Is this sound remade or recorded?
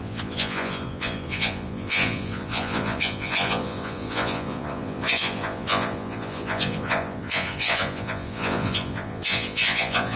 remade